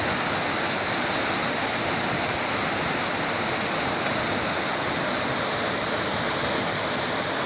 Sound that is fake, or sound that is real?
real